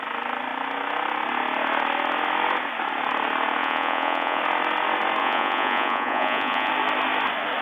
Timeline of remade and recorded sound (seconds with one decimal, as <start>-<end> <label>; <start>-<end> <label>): 0.0-3.6 recorded; 3.6-4.4 remade; 4.4-5.2 recorded; 5.2-6.7 remade; 6.7-7.6 recorded